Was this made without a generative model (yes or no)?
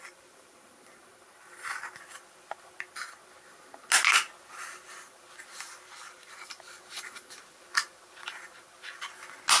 yes